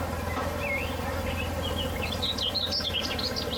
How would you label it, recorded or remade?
recorded